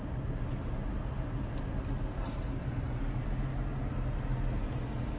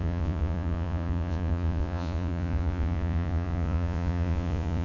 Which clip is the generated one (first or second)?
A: second